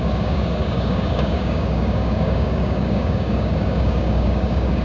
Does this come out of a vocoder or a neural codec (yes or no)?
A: yes